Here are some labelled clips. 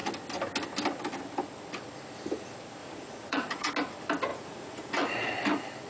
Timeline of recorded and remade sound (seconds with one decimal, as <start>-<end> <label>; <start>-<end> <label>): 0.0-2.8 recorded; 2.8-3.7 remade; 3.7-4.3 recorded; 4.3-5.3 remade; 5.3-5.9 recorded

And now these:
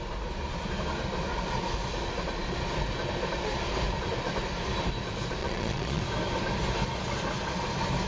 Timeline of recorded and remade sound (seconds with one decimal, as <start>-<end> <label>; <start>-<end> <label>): 0.0-5.4 recorded; 5.4-6.0 remade; 6.0-8.1 recorded

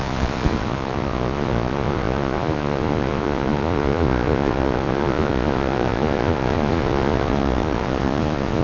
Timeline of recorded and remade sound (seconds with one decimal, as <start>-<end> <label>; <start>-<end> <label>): 0.0-8.6 remade

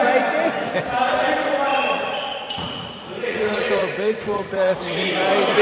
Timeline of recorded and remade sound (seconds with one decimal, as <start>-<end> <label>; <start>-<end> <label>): 0.0-1.7 recorded; 1.7-5.1 remade; 5.1-5.6 recorded

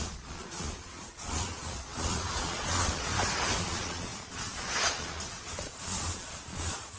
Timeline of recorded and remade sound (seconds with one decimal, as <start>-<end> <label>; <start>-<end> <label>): 0.0-3.1 remade; 3.1-3.6 recorded; 3.6-7.0 remade